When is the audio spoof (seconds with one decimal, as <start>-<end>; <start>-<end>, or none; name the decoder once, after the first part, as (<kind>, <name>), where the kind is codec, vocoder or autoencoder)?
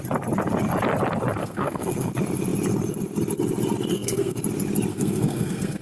1.4-2.1 (codec, SNAC); 3.9-4.4; 4.9-5.8